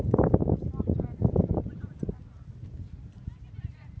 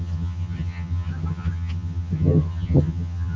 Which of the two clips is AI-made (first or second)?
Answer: second